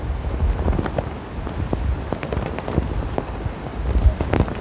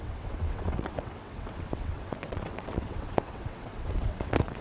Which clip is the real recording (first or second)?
first